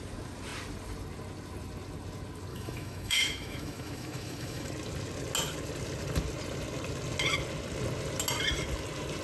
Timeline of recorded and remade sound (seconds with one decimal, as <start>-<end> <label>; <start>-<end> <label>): 0.0-2.5 recorded; 2.5-4.7 remade; 4.7-9.2 recorded